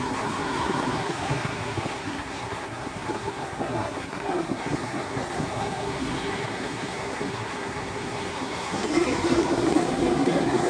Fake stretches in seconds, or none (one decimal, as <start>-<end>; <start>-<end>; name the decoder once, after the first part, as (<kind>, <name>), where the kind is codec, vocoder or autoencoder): 0.0-10.7 (codec, SNAC)